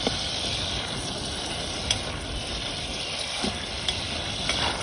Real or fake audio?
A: real